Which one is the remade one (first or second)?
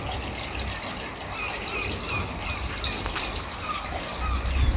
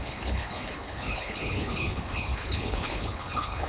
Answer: second